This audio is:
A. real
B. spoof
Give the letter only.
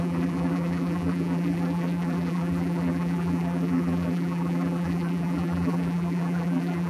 B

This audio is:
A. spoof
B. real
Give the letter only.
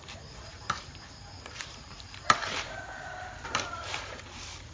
A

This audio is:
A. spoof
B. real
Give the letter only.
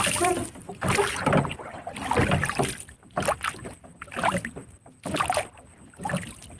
B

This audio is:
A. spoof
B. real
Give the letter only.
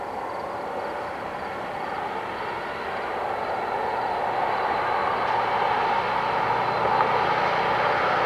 B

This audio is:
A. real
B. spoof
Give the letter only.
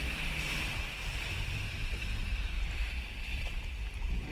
B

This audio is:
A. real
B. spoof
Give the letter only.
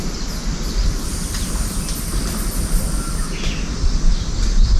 A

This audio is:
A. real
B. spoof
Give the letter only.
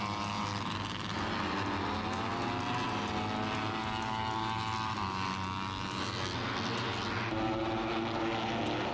A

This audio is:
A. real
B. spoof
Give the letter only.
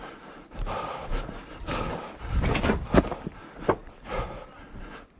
A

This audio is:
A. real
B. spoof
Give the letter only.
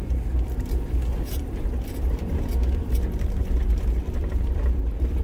B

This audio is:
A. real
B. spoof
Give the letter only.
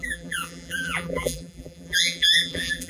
B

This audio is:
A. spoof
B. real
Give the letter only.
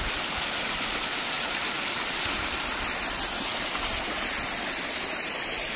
B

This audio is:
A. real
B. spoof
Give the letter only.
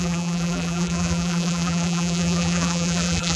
B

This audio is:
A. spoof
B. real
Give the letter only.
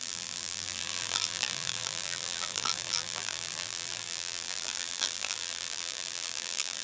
A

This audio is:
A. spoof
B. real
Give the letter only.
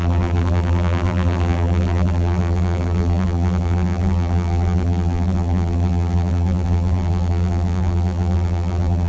A